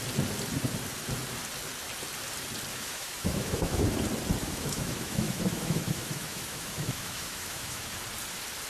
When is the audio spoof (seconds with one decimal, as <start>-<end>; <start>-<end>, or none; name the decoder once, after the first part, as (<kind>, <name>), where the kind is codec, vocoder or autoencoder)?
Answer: 2.7-3.8 (autoencoder, DAC-VAE); 4.4-7.9

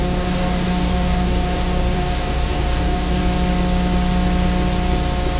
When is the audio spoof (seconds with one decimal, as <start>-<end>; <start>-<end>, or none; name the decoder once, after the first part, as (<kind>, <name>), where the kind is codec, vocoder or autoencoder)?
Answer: 0.0-3.2 (codec, DAC)

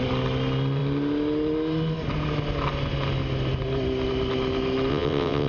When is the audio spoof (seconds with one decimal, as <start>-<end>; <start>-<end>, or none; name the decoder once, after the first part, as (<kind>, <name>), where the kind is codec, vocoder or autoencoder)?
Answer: 4.9-5.5 (vocoder, WaveNeXt)

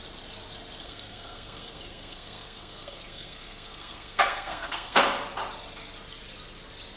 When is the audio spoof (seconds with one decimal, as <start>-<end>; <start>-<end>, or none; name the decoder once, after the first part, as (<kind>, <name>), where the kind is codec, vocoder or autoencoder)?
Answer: 0.8-5.0 (codec, SNAC)

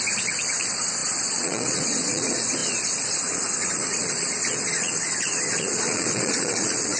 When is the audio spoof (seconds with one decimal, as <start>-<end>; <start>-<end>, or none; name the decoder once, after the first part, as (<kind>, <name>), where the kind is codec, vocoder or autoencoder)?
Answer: 0.0-7.0 (vocoder, Vocos)

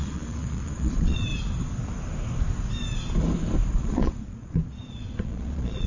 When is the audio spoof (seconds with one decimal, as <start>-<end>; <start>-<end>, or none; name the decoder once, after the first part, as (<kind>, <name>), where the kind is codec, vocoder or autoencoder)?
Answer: 0.0-1.3 (vocoder, Vocos); 3.7-5.9

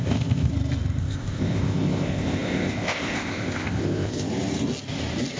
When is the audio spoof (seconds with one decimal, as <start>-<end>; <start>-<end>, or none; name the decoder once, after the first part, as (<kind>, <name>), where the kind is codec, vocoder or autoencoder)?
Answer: 0.0-0.5 (codec, ZipCodec); 1.0-4.3

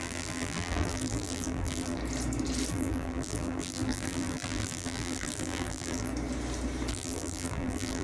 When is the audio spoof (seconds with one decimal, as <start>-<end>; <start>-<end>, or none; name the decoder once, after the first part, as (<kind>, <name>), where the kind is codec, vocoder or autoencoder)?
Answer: 0.0-2.0 (vocoder, BigVGAN v2); 2.7-6.1; 6.9-8.0